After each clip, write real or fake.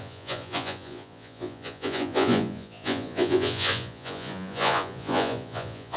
fake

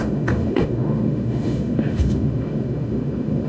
fake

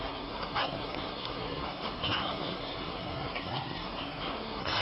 fake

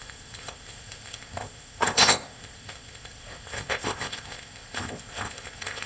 fake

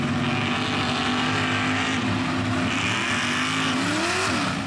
real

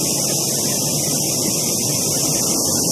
real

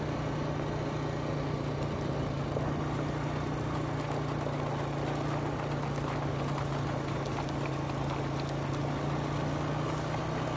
real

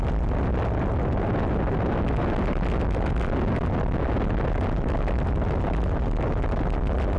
real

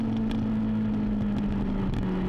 real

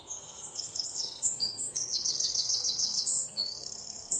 fake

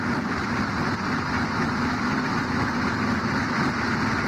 real